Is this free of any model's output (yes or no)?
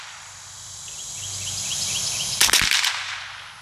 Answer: yes